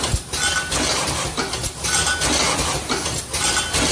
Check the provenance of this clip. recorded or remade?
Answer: recorded